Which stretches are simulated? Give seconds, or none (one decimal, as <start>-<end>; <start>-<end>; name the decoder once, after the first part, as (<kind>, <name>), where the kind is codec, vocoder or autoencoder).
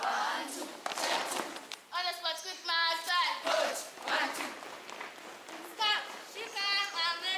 none